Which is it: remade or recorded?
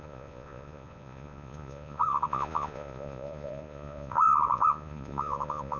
remade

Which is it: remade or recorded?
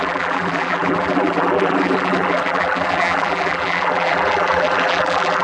remade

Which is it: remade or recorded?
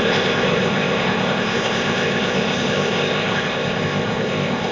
remade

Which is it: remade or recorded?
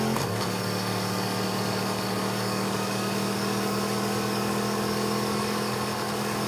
remade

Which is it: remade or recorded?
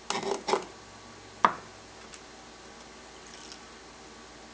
recorded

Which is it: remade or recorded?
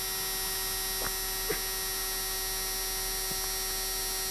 recorded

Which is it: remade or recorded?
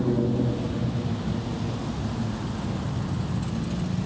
recorded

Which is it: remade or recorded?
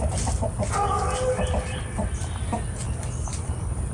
recorded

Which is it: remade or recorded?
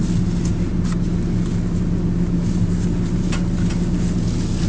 recorded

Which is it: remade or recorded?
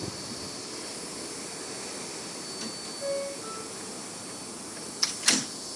recorded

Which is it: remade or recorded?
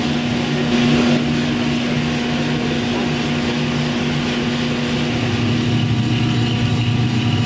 recorded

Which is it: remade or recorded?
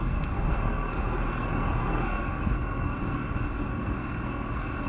remade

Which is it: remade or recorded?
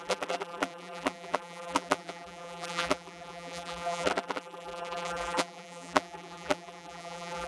remade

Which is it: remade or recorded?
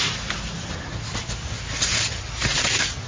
recorded